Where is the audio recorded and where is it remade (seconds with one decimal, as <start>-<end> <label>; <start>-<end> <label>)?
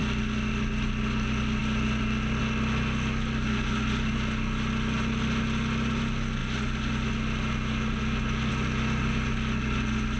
0.0-10.2 recorded